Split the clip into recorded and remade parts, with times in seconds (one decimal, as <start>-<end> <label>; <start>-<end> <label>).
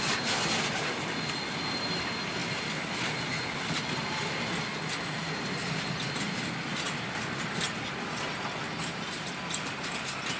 0.0-10.4 recorded